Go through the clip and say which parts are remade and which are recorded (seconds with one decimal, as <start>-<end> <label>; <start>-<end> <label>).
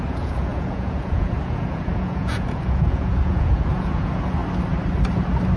0.0-4.4 remade; 4.4-5.6 recorded